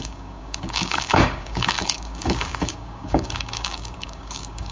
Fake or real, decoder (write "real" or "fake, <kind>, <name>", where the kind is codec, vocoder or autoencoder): fake, codec, DAC